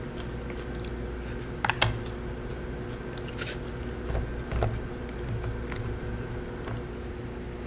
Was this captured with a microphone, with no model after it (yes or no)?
yes